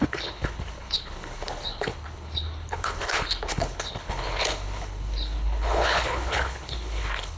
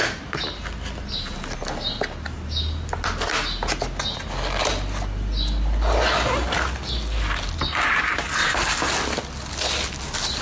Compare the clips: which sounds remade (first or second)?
first